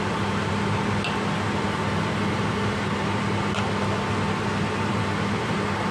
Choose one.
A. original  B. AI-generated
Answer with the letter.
A